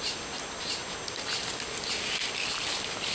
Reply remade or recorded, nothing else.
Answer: recorded